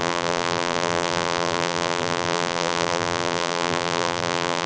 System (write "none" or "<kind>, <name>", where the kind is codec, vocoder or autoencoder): vocoder, BigVGAN v2